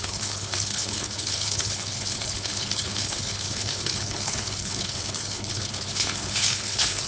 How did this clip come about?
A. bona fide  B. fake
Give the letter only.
B